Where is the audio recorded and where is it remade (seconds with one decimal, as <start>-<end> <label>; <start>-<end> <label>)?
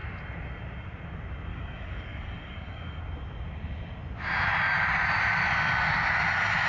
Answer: 0.0-1.5 recorded; 1.5-3.0 remade; 3.0-6.7 recorded